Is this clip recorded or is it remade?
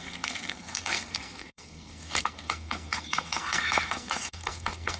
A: remade